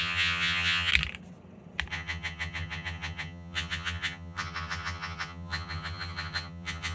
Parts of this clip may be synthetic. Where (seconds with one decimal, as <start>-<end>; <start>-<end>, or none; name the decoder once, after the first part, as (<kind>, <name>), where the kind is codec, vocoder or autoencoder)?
0.0-0.9 (vocoder, HiFi-GAN); 1.9-6.9